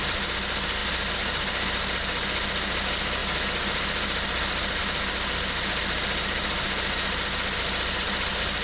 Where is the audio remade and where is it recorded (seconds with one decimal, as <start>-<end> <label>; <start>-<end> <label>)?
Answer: 0.0-8.6 recorded